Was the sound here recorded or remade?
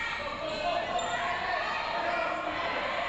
recorded